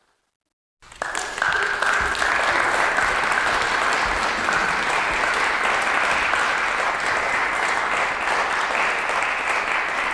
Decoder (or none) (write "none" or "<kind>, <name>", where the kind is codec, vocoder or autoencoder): none